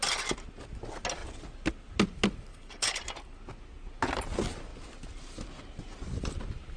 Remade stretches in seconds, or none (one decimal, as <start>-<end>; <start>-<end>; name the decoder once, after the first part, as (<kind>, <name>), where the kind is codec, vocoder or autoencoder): 2.5-3.0 (codec, HILCodec)